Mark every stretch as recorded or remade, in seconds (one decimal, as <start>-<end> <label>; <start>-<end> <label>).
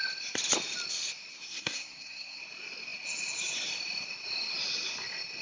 0.0-1.3 recorded; 1.3-2.4 remade; 2.4-5.4 recorded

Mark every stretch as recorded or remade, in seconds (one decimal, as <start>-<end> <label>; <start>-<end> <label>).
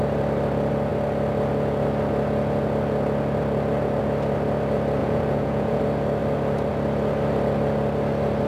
0.0-5.0 recorded; 5.0-5.8 remade; 5.8-8.5 recorded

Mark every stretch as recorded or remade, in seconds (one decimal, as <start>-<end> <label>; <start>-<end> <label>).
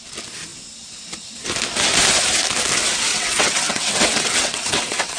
0.0-3.1 recorded; 3.1-5.2 remade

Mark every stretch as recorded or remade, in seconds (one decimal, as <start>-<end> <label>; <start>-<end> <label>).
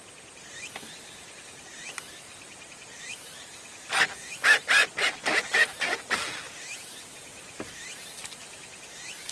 0.0-3.9 remade; 3.9-7.4 recorded; 7.4-8.0 remade; 8.0-9.3 recorded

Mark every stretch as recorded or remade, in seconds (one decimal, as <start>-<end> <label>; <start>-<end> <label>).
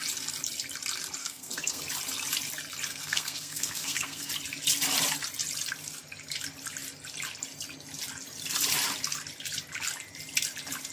0.0-1.2 recorded; 1.2-1.8 remade; 1.8-2.9 recorded; 2.9-4.3 remade; 4.3-10.9 recorded